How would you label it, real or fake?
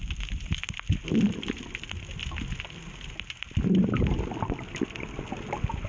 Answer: real